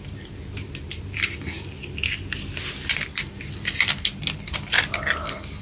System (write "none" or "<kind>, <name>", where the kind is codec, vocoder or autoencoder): none